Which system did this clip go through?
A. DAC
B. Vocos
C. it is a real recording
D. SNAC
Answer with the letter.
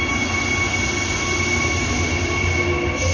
C